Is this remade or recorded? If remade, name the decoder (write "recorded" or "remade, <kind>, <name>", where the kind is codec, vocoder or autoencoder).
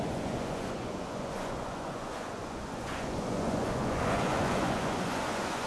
remade, vocoder, Vocos